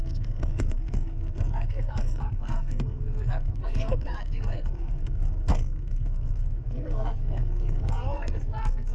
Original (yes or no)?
no